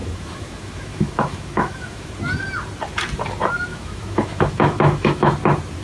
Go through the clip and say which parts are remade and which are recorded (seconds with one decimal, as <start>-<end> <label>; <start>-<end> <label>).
0.0-2.1 remade; 2.1-3.7 recorded; 3.7-5.3 remade; 5.3-5.8 recorded